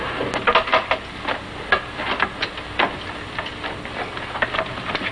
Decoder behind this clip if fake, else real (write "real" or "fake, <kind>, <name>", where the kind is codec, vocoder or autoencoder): real